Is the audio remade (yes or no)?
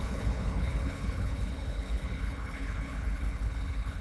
yes